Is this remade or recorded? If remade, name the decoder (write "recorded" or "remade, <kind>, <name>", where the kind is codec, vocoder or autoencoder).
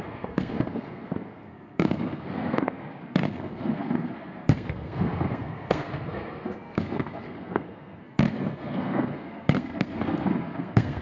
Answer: remade, codec, SNAC